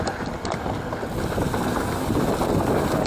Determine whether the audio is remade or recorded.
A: recorded